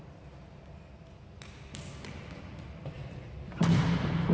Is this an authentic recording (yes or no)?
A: yes